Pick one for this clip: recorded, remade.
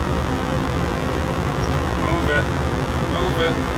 remade